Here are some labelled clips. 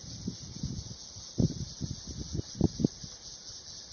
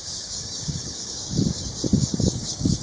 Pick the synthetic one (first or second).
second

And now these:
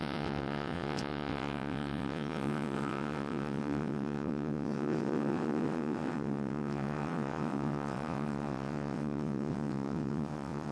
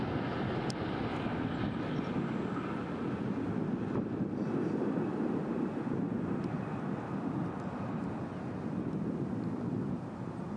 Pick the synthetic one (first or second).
first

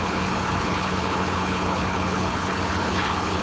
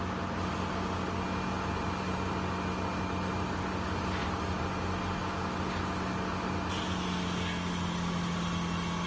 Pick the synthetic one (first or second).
first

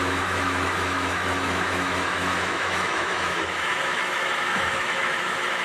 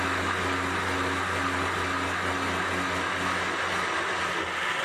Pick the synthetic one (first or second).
first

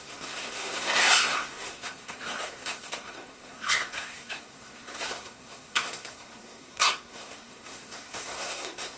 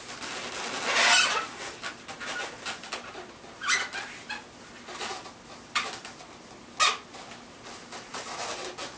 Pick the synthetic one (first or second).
first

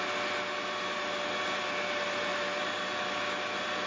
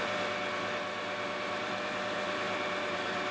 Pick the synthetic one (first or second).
second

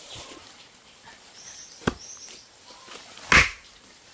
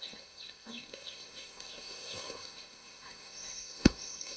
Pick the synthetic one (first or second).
second